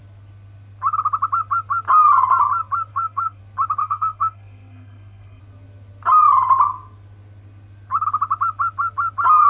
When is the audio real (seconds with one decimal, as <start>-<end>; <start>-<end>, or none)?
0.0-2.9; 3.4-3.8; 5.4-9.5